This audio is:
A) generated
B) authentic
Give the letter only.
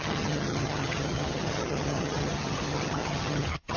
A